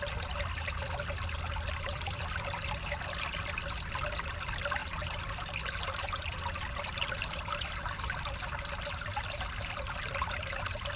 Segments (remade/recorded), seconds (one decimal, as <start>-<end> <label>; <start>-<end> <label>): 0.0-11.0 recorded